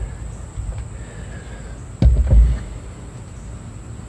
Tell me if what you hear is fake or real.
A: real